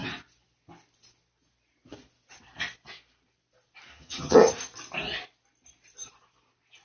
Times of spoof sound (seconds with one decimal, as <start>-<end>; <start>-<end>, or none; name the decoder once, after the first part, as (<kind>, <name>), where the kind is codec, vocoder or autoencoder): 3.9-4.5 (vocoder, HiFi-GAN)